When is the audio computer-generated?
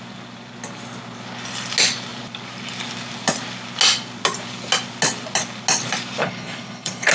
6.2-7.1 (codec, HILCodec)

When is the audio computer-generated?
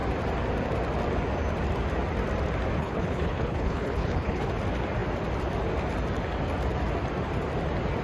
2.8-4.5 (codec, HILCodec)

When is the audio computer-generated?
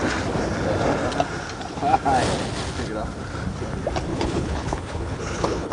4.1-5.7 (codec, HILCodec)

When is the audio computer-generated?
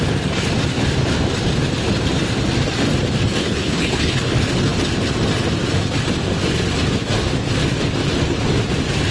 3.4-4.3 (codec, HILCodec)